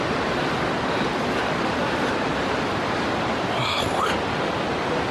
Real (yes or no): yes